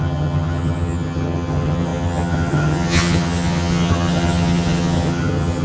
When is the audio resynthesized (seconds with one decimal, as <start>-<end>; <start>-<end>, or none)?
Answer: 0.0-5.6